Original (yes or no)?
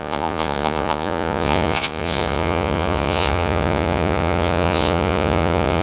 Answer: no